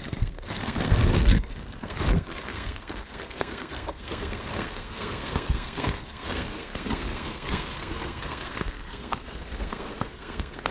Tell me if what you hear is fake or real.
fake